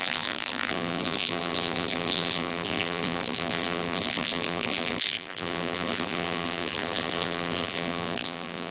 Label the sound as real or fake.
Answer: fake